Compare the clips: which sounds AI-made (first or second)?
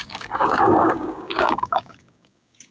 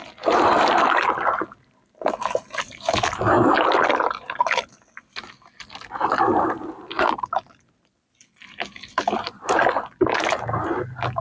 first